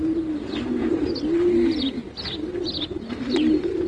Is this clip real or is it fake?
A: real